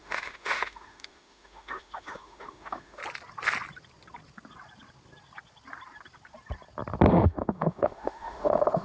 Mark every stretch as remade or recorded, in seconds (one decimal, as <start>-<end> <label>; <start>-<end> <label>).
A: 0.0-3.0 remade; 3.0-7.1 recorded; 7.1-8.8 remade

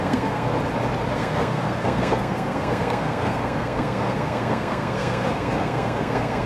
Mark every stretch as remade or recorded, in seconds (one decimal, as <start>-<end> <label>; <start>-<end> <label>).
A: 0.0-0.5 remade; 0.5-1.1 recorded; 1.1-6.5 remade

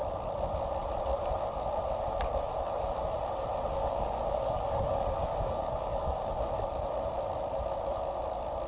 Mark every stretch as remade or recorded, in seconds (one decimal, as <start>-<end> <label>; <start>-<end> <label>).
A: 0.0-3.8 recorded; 3.8-6.3 remade; 6.3-8.7 recorded

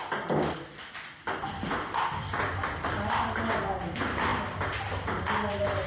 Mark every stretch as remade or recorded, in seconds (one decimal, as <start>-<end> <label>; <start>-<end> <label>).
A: 0.0-5.9 recorded

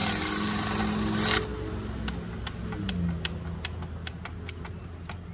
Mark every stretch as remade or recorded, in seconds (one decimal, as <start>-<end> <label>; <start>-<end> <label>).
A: 0.0-5.3 recorded

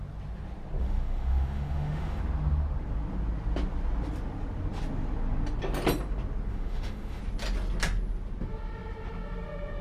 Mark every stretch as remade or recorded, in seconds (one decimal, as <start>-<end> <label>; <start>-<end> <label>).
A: 0.0-0.8 recorded; 0.8-2.2 remade; 2.2-6.5 recorded; 6.5-7.2 remade; 7.2-9.8 recorded

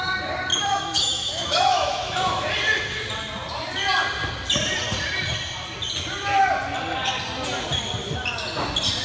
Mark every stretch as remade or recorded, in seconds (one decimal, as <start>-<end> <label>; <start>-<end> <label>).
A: 0.0-0.5 recorded; 0.5-2.5 remade; 2.5-9.0 recorded

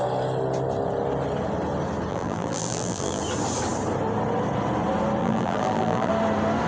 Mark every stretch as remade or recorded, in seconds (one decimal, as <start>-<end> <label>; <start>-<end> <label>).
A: 0.0-2.1 recorded; 2.1-3.2 remade; 3.2-5.2 recorded; 5.2-6.1 remade; 6.1-6.7 recorded